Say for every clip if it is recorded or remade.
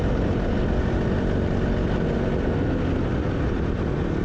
recorded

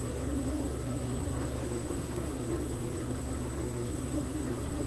remade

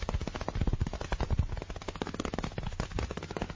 recorded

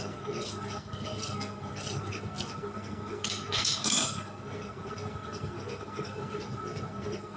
remade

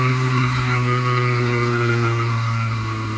remade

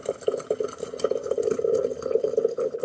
recorded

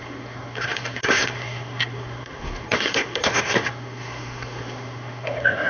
remade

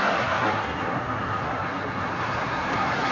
remade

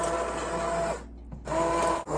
recorded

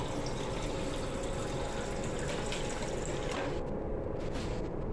recorded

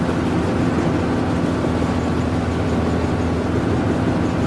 recorded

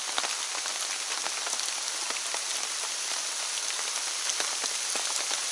recorded